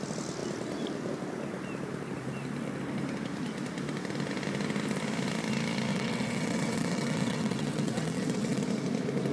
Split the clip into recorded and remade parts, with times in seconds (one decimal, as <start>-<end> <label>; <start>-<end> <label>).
0.0-5.9 recorded; 5.9-8.6 remade; 8.6-9.3 recorded